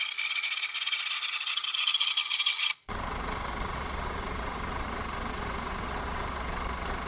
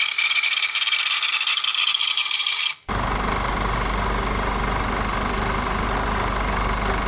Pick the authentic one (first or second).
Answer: second